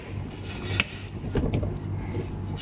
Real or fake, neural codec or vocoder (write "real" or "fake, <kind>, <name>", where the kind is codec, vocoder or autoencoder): real